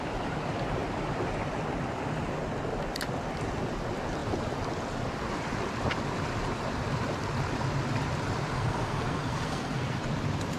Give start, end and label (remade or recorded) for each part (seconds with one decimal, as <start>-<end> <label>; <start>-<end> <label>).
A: 0.0-8.5 recorded; 8.5-10.0 remade; 10.0-10.6 recorded